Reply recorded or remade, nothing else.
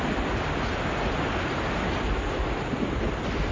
recorded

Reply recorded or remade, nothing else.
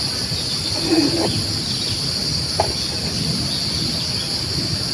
recorded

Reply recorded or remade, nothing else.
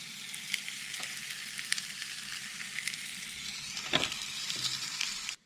remade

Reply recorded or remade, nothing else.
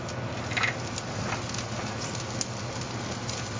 recorded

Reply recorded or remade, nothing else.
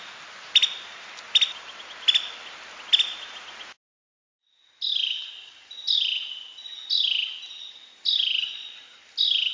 recorded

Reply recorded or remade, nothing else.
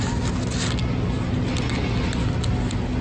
recorded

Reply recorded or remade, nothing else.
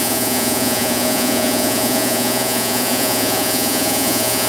remade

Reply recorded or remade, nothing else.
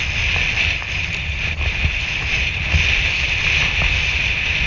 recorded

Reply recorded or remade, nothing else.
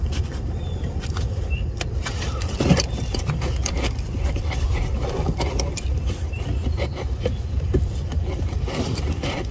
remade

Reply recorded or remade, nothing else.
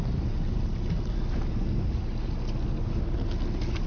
recorded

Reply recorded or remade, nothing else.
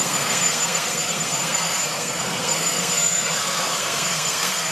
remade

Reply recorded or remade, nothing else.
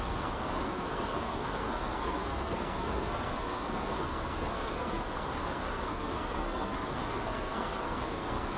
remade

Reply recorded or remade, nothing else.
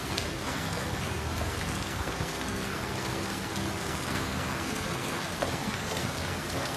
remade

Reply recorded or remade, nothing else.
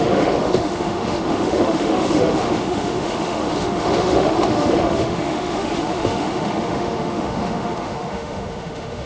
remade